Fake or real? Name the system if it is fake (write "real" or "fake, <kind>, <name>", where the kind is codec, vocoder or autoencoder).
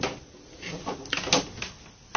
real